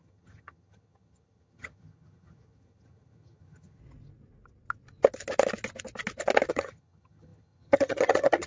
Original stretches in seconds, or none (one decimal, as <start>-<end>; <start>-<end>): 3.8-6.5